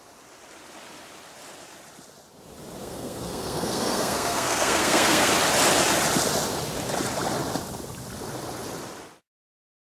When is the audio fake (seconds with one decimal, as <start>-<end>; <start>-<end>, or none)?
2.8-5.3